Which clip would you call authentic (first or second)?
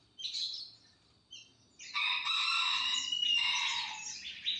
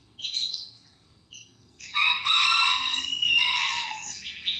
first